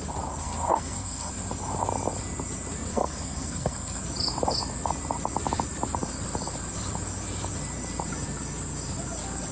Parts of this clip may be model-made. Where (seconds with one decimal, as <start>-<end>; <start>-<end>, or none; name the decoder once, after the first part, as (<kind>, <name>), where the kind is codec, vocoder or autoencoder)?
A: 0.4-1.3 (codec, SNAC); 2.9-4.0